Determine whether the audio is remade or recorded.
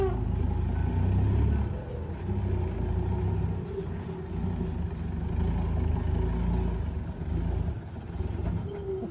recorded